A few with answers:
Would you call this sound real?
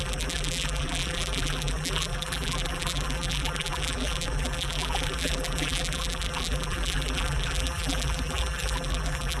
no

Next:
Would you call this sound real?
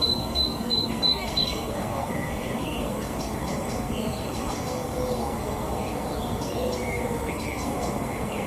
no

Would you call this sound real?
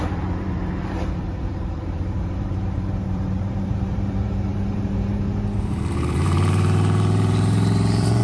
no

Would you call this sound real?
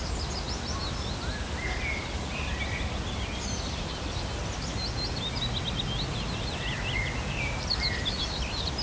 yes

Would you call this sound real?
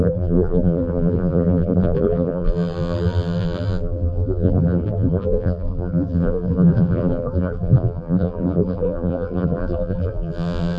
no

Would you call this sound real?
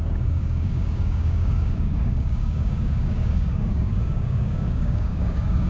no